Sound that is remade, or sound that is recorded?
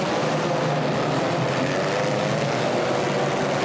recorded